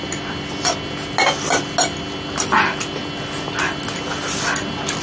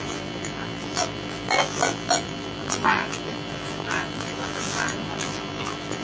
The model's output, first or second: second